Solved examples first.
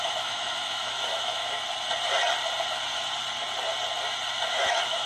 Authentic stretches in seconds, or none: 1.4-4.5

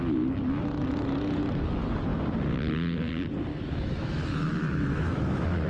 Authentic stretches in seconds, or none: 0.0-3.5

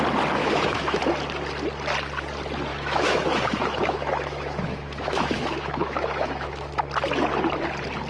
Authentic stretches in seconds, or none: 0.0-0.4; 1.0-2.7; 6.7-8.1

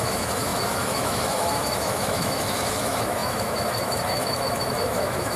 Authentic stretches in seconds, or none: none

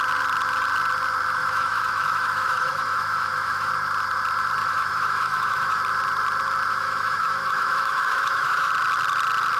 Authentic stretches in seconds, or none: 0.0-1.4; 3.7-4.6; 5.8-6.7; 8.7-9.6

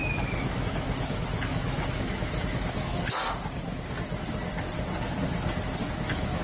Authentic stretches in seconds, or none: 3.2-5.9